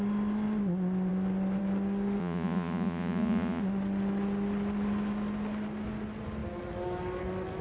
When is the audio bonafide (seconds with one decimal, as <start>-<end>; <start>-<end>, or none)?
0.0-2.2; 3.6-7.6

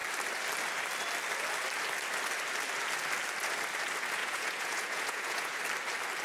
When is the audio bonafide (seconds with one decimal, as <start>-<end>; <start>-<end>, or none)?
0.0-4.2; 5.6-6.2